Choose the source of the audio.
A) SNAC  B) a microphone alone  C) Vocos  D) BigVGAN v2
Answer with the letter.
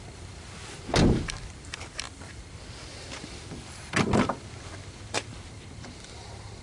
D